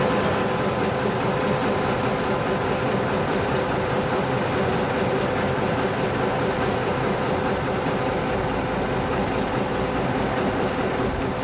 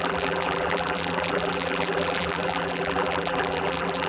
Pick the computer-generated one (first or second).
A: second